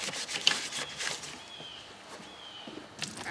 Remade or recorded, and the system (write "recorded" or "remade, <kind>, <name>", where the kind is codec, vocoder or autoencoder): recorded